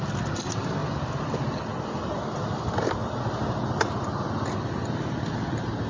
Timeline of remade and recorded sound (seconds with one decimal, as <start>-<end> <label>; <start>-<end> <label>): 0.0-5.9 recorded